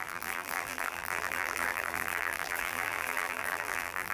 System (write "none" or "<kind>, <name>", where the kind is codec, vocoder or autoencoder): vocoder, BigVGAN v2